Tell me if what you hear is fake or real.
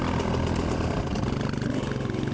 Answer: real